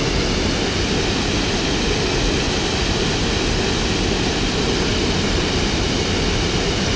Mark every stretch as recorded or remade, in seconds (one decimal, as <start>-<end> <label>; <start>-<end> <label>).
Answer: 0.0-3.2 recorded; 3.2-4.9 remade; 4.9-7.0 recorded